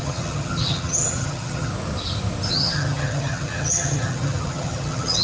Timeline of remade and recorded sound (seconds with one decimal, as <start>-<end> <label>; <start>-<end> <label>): 0.0-1.7 remade; 1.7-2.5 recorded; 2.5-5.2 remade